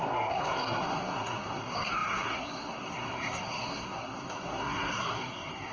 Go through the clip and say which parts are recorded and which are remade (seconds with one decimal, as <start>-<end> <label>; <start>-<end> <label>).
0.0-5.7 remade